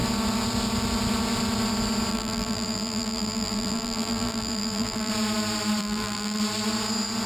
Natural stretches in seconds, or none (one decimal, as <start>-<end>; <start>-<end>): 0.0-2.1; 5.1-5.8; 6.4-7.3